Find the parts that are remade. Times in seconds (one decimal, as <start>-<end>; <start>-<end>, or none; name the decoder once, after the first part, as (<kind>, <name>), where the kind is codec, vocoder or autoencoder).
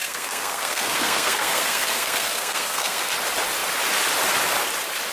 0.0-3.1 (codec, SNAC)